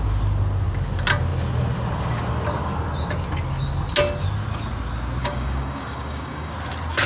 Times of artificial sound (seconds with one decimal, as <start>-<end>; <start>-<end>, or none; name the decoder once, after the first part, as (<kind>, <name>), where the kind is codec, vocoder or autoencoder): 5.2-6.5 (codec, DAC)